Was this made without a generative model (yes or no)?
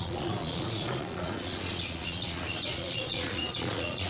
no